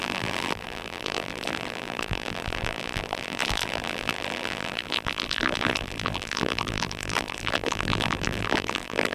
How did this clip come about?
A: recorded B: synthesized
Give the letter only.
B